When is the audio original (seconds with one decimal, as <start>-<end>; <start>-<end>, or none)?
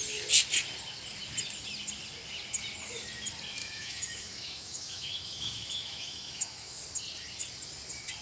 0.0-3.6; 6.8-8.2